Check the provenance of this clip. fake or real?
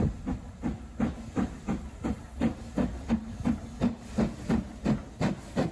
real